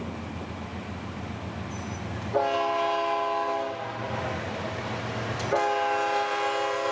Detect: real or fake real